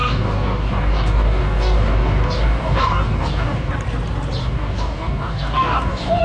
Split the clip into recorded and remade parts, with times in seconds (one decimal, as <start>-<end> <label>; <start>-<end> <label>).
0.0-3.7 remade; 3.7-4.4 recorded; 4.4-6.2 remade